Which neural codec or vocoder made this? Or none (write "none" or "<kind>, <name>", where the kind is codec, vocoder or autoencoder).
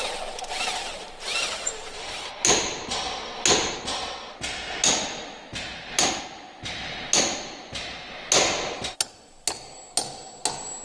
none